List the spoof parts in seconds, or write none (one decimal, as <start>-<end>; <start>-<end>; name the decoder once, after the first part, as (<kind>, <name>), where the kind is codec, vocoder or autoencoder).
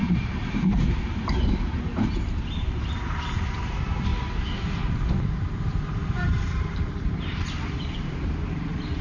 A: 0.0-4.1 (vocoder, BigVGAN v2); 5.1-9.0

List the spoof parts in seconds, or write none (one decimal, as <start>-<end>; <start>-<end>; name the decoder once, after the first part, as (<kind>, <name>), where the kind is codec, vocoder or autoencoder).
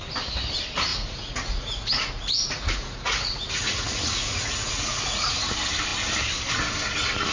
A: 0.9-5.3 (vocoder, Vocos)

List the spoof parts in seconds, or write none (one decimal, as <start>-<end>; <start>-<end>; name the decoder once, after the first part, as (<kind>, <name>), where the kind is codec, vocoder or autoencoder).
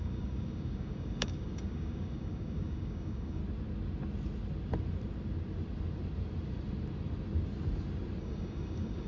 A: 0.0-3.4 (codec, DAC); 8.2-9.1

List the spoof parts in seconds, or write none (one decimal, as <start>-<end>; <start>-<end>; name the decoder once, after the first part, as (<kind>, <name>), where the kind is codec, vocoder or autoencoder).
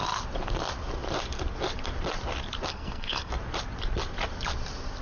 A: 2.7-3.3 (codec, SNAC)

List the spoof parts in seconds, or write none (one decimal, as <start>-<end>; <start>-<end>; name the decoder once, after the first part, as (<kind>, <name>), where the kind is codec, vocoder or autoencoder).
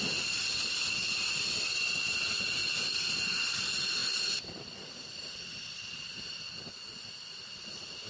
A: 4.0-6.6 (vocoder, BigVGAN v2)